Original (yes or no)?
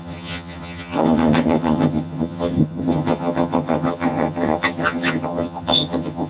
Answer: no